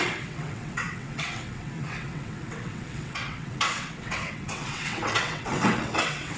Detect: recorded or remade remade